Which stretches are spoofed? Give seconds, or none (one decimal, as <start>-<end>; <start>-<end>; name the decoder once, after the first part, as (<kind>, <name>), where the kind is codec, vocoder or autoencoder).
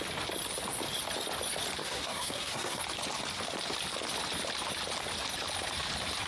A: 1.8-2.8 (codec, SNAC)